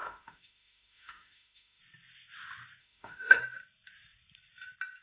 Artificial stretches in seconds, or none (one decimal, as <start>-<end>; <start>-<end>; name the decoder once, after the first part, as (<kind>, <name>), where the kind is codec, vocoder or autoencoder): 0.0-1.8 (autoencoder, DAC-VAE); 2.8-3.4